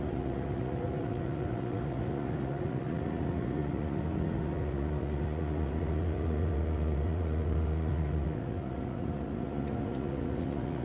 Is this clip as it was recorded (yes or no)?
no